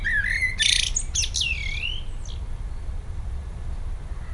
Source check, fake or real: real